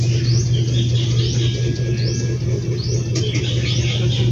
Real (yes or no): yes